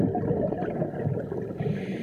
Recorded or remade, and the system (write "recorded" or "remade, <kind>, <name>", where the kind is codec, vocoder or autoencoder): recorded